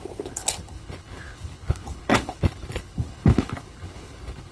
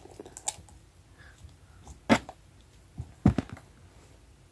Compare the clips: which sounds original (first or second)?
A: second